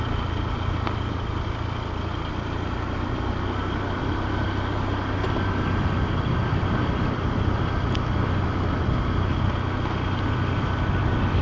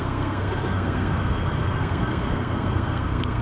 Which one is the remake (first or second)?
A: second